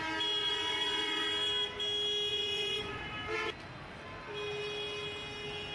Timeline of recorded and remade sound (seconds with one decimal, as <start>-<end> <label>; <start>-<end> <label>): 0.0-0.4 recorded; 0.4-1.3 remade; 1.3-2.3 recorded; 2.3-3.0 remade; 3.0-5.7 recorded